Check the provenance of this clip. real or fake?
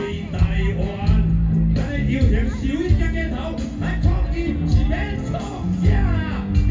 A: real